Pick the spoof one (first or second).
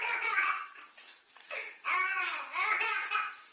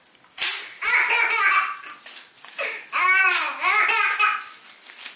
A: first